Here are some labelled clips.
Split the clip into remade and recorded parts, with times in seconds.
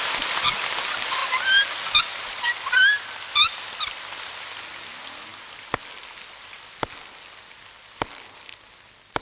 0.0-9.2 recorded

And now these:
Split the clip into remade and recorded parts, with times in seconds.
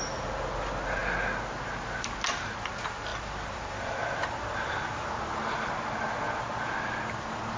0.0-3.1 recorded; 3.1-5.7 remade; 5.7-7.6 recorded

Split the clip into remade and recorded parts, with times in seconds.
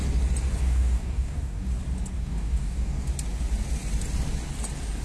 0.0-0.6 recorded; 0.6-1.7 remade; 1.7-2.2 recorded; 2.2-3.1 remade; 3.1-5.0 recorded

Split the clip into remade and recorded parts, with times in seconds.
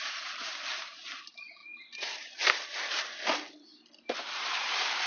0.0-5.1 remade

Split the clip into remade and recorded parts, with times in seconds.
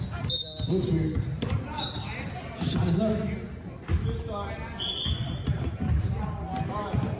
0.0-7.2 recorded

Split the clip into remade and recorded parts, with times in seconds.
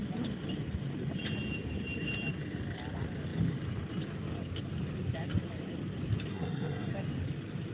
0.0-6.3 recorded; 6.3-6.9 remade; 6.9-7.7 recorded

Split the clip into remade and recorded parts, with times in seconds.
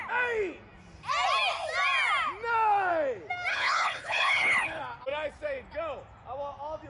0.0-3.5 recorded; 3.5-4.8 remade; 4.8-6.9 recorded